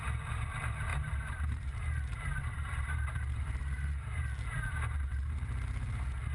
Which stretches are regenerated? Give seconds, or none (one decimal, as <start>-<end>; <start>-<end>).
0.9-4.2